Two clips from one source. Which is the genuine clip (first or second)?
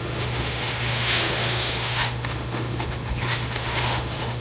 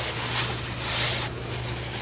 second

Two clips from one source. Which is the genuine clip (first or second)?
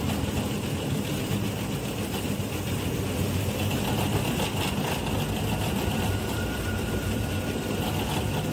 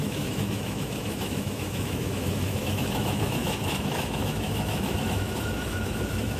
first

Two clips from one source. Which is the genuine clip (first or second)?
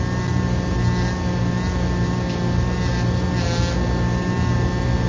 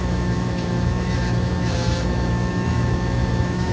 first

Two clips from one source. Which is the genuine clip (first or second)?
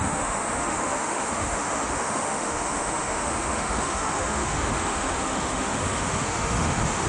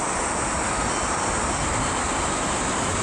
second